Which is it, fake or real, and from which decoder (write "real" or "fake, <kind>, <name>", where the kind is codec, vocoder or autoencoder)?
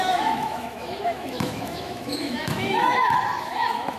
fake, autoencoder, DAC-VAE